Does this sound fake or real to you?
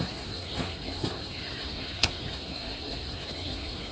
fake